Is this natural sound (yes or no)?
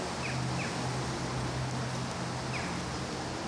yes